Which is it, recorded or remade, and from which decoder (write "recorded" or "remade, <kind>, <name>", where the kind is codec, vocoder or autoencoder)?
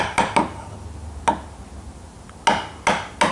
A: recorded